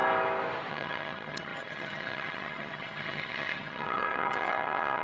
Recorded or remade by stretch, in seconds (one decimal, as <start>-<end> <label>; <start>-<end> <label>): 0.0-0.7 recorded; 0.7-5.0 remade